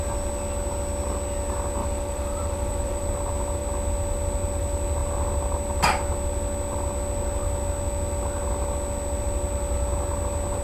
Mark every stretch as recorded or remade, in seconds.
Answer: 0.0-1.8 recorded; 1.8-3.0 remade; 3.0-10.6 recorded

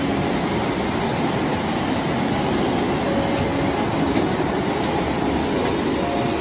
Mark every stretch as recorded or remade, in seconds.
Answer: 0.0-6.4 recorded

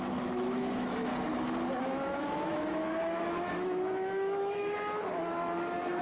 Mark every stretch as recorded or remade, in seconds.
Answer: 0.0-1.1 remade; 1.1-1.8 recorded; 1.8-6.0 remade

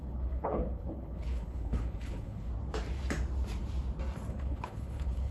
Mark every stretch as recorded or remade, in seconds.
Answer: 0.0-2.5 remade; 2.5-4.3 recorded; 4.3-5.3 remade

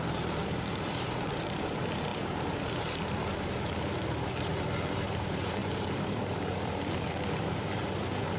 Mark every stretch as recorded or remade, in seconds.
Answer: 0.0-8.4 remade

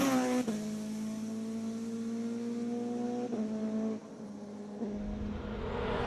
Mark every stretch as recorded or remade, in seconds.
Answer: 0.0-6.1 recorded

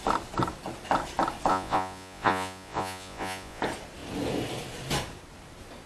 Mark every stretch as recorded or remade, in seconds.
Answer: 0.0-1.5 recorded; 1.5-3.6 remade; 3.6-5.9 recorded

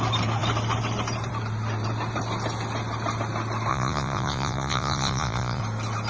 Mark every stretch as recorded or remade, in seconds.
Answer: 0.0-3.7 recorded; 3.7-5.6 remade; 5.6-6.1 recorded